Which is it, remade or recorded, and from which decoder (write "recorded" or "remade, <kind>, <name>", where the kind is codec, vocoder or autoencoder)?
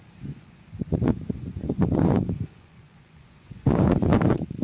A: remade, vocoder, Vocos